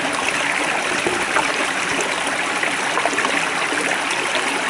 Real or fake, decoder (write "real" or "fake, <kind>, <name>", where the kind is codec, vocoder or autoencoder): real